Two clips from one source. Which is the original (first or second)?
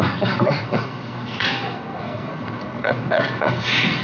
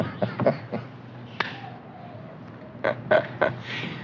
second